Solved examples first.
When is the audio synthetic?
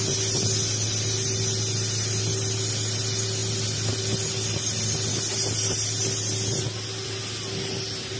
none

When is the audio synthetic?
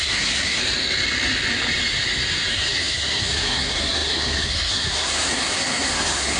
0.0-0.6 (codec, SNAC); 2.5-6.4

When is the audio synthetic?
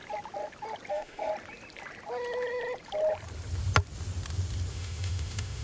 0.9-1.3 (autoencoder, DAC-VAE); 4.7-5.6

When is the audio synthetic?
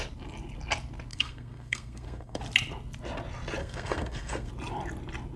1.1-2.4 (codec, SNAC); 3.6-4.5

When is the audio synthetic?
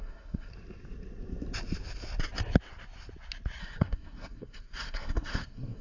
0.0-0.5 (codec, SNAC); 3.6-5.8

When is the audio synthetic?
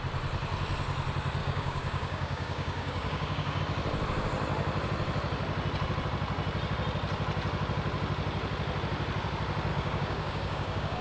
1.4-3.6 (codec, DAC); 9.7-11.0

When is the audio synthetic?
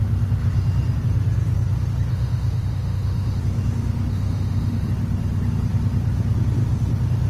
2.1-3.4 (autoencoder, DAC-VAE); 4.1-4.9